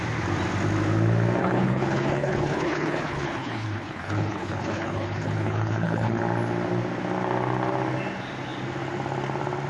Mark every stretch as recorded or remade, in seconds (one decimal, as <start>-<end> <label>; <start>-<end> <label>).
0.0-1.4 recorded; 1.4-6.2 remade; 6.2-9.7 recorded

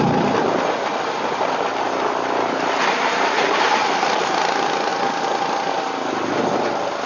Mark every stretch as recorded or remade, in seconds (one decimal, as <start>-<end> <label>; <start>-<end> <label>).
0.0-7.1 recorded

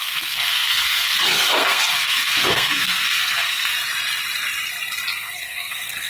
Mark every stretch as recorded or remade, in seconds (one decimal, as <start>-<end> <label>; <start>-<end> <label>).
0.0-3.7 remade; 3.7-5.1 recorded; 5.1-6.1 remade